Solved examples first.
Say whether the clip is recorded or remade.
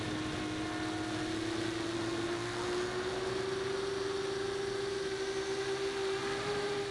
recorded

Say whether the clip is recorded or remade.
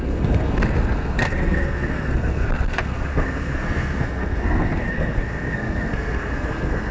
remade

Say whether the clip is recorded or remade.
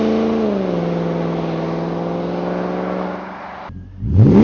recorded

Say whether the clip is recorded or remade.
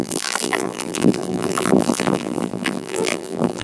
remade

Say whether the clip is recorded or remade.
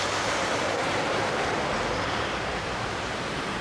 remade